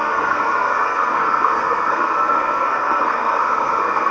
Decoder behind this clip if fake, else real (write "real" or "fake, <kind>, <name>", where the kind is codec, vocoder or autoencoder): fake, codec, SNAC